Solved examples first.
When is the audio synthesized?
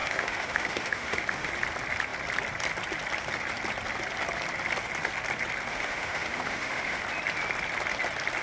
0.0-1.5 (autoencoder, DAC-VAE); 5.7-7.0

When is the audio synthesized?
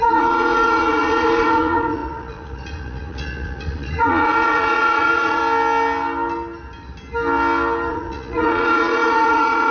0.0-5.4 (vocoder, Vocos); 7.9-9.7